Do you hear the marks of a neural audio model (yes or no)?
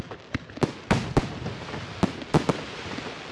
no